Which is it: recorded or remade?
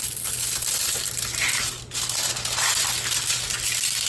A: recorded